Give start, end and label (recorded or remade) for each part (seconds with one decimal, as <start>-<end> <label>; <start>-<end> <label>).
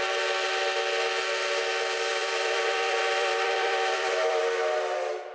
0.0-2.1 recorded; 2.1-4.4 remade; 4.4-5.3 recorded